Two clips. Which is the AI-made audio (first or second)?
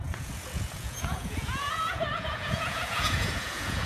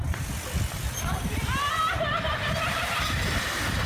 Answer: first